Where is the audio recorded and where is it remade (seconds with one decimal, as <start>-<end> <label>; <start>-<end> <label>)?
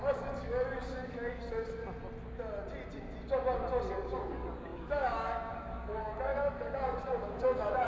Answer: 0.0-1.8 remade; 1.8-3.9 recorded; 3.9-7.9 remade